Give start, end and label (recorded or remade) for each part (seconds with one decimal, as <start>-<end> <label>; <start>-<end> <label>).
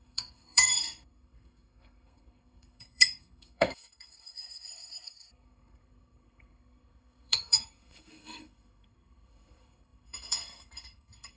0.0-11.4 remade